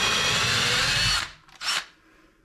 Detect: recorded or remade recorded